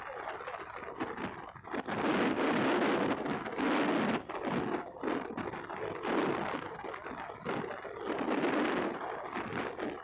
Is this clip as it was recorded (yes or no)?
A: yes